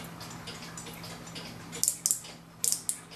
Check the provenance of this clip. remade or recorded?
recorded